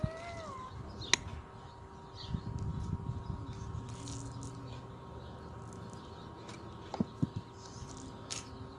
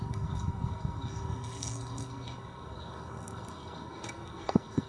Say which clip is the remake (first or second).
second